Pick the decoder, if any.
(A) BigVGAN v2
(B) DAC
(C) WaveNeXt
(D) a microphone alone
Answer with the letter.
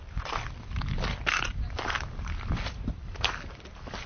D